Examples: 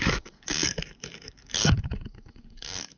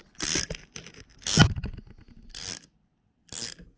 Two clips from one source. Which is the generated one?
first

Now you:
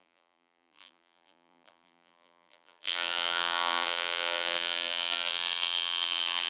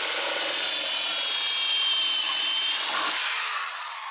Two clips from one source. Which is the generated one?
first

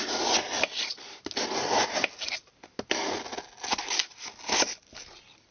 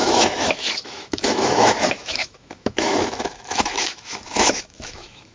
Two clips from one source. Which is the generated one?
second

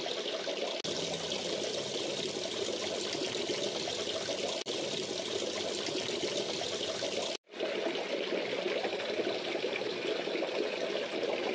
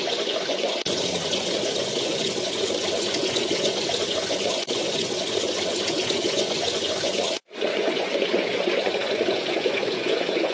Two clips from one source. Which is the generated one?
second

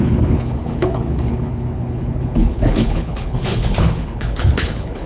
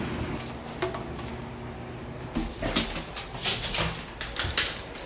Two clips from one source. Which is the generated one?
first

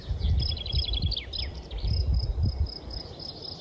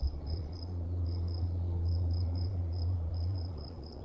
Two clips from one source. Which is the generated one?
second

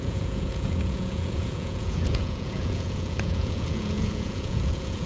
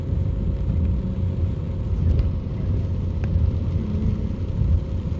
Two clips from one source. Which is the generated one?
first